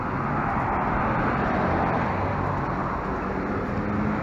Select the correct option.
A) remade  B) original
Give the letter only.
B